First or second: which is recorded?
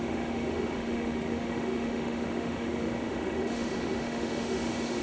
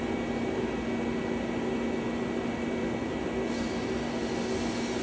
second